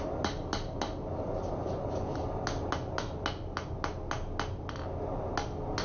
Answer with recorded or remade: recorded